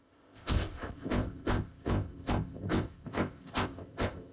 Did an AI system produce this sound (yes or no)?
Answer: yes